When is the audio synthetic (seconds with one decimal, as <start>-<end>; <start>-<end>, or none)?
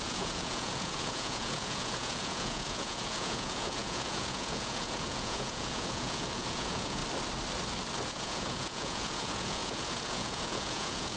0.0-7.0; 8.1-11.2